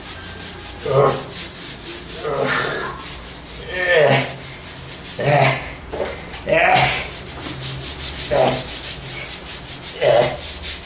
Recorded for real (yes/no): yes